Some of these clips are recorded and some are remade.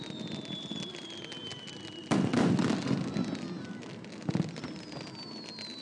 recorded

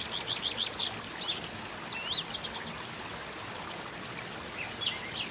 recorded